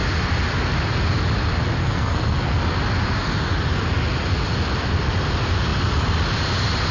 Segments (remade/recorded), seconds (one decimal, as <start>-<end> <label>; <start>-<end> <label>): 0.0-1.8 recorded; 1.8-2.6 remade; 2.6-6.9 recorded